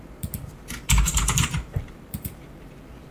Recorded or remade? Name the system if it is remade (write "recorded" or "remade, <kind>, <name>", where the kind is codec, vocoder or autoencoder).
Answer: remade, vocoder, BigVGAN v2